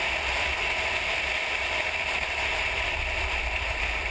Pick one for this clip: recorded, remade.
recorded